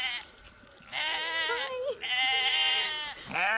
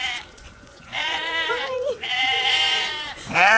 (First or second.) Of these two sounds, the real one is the first